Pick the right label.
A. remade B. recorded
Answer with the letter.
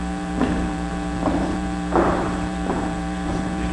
A